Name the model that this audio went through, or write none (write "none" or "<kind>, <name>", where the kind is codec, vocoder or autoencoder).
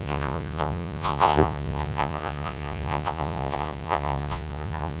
vocoder, Vocos